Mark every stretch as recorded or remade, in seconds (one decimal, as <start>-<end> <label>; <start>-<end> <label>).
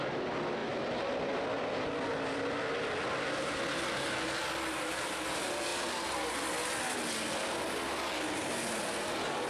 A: 0.0-9.5 recorded